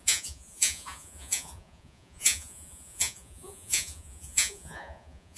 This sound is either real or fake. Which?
fake